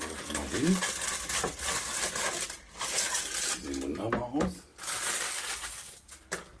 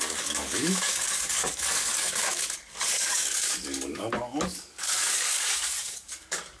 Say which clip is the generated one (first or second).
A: second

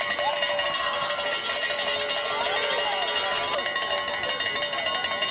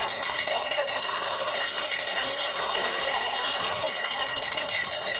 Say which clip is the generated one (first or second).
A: second